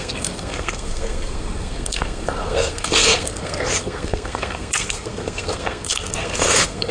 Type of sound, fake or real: fake